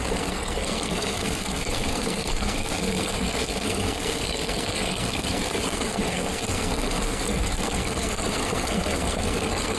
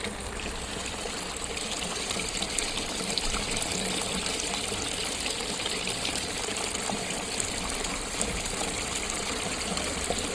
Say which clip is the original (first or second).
second